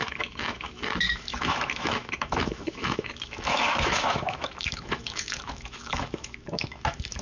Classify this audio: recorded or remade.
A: remade